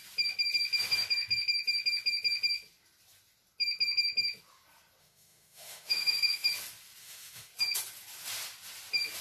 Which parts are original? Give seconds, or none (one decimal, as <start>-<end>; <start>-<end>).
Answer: 0.0-5.0; 6.5-7.0; 7.5-9.2